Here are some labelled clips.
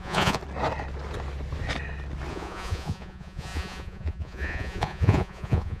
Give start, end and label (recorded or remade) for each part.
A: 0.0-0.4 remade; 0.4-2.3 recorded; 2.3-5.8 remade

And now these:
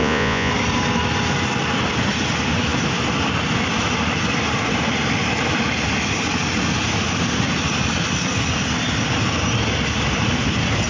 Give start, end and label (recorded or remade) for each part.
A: 0.0-0.5 remade; 0.5-10.9 recorded

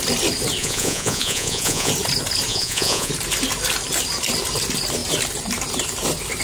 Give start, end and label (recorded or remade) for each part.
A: 0.0-0.6 recorded; 0.6-1.9 remade; 1.9-2.5 recorded; 2.5-3.1 remade; 3.1-6.4 recorded

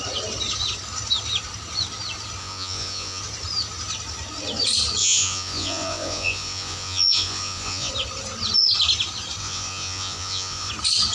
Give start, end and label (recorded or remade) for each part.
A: 0.0-2.4 recorded; 2.4-3.2 remade; 3.2-5.0 recorded; 5.0-7.9 remade; 7.9-9.4 recorded; 9.4-10.7 remade; 10.7-11.1 recorded

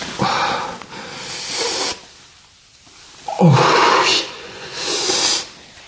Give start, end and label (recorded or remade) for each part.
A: 0.0-4.1 recorded; 4.1-5.1 remade; 5.1-5.9 recorded

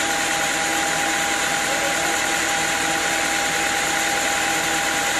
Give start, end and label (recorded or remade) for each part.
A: 0.0-5.2 recorded

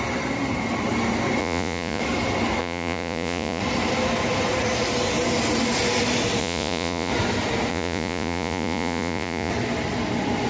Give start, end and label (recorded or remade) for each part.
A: 0.0-1.4 recorded; 1.4-2.0 remade; 2.0-2.6 recorded; 2.6-3.6 remade; 3.6-6.4 recorded; 6.4-7.1 remade; 7.1-7.7 recorded; 7.7-9.5 remade; 9.5-10.5 recorded